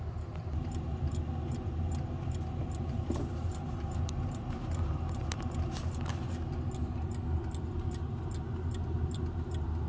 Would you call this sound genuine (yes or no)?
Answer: yes